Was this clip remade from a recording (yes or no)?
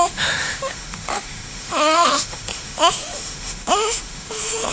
yes